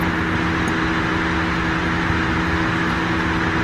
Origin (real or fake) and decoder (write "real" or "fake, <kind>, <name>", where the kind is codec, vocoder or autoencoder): real